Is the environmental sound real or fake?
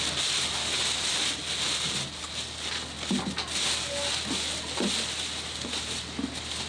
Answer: real